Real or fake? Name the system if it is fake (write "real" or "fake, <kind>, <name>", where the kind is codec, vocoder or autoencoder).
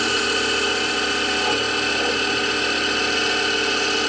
real